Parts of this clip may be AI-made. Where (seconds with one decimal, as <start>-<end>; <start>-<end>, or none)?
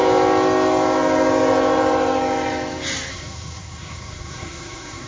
3.1-5.1